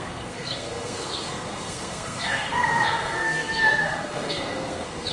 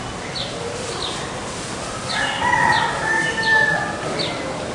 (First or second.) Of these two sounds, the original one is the second